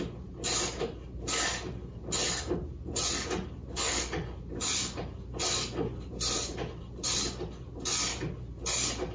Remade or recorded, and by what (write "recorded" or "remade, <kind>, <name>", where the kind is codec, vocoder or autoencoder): recorded